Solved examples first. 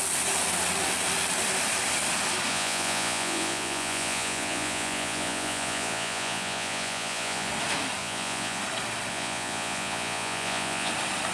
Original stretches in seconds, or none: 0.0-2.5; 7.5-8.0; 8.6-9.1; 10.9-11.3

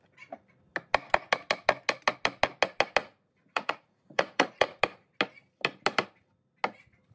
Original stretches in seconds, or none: 0.0-3.0; 4.8-7.1